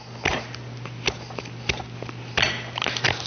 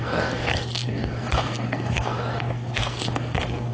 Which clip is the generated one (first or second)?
second